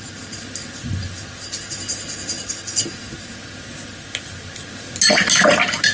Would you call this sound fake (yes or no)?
no